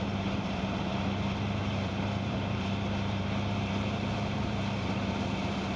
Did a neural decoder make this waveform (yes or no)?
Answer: yes